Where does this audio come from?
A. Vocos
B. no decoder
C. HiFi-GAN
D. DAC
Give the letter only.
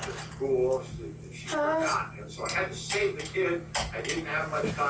B